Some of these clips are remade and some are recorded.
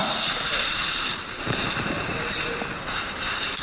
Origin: remade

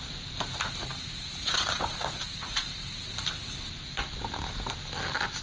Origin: recorded